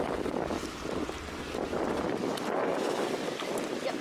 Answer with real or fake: real